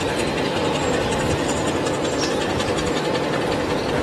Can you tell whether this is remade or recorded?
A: recorded